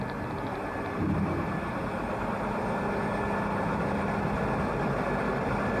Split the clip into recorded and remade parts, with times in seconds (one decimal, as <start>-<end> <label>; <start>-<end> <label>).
0.0-5.8 recorded